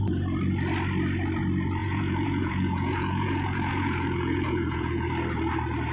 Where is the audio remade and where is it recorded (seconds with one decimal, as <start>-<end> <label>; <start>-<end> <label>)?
0.0-1.8 recorded; 1.8-5.1 remade; 5.1-5.9 recorded